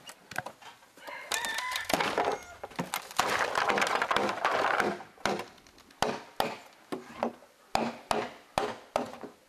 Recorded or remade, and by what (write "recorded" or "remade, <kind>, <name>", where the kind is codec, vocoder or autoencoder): recorded